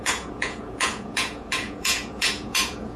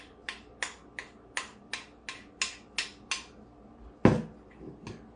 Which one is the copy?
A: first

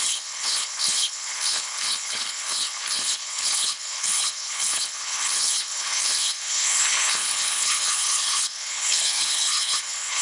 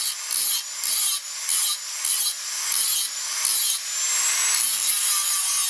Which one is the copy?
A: first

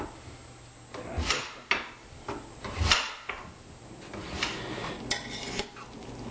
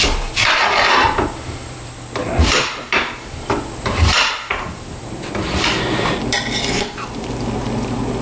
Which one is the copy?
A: second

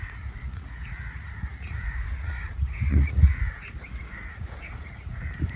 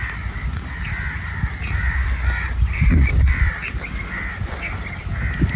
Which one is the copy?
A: first